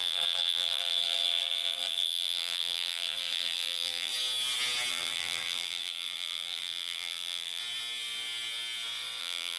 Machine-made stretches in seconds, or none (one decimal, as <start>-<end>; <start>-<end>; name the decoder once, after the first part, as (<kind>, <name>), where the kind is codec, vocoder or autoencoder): 0.0-4.1 (vocoder, BigVGAN v2); 4.9-7.6; 9.2-9.6